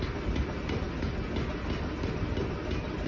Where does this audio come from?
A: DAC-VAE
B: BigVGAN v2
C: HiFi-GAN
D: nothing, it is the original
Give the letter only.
D